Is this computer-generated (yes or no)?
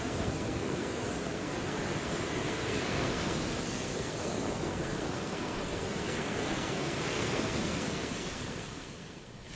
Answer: yes